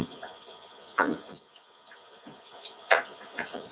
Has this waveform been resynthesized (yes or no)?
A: yes